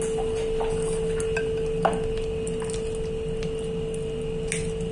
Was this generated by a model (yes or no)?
no